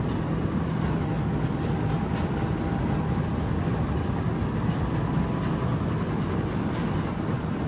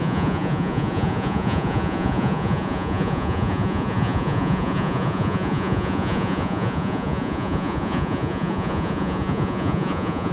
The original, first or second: first